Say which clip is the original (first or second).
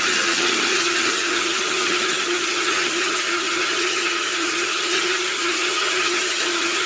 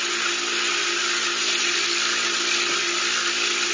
second